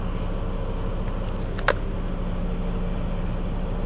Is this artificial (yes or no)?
no